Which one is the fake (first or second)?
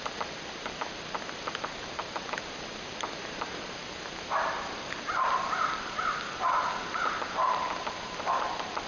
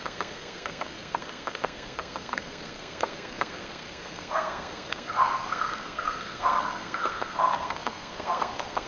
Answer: second